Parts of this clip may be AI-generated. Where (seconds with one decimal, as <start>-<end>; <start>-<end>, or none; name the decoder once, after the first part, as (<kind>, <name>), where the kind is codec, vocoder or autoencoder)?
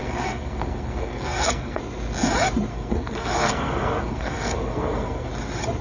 0.0-1.8 (codec, SNAC); 2.7-5.3